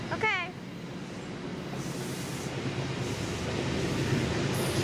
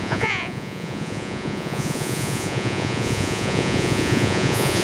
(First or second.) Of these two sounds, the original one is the first